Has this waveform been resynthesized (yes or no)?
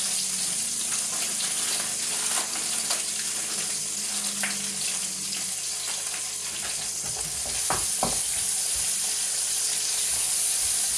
no